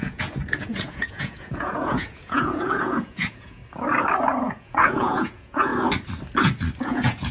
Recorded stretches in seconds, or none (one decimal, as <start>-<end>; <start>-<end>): 3.6-4.4; 5.7-6.8